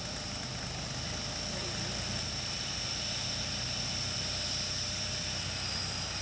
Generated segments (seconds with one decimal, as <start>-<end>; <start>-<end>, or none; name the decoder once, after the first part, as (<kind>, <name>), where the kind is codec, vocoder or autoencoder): 1.6-5.1 (vocoder, BigVGAN v2)